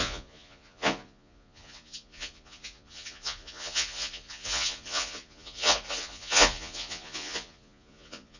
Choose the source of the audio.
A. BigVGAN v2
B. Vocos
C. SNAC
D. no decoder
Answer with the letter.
B